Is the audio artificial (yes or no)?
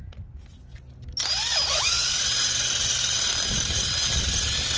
no